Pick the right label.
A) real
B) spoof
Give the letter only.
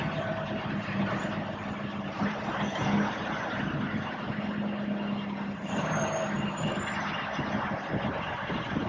A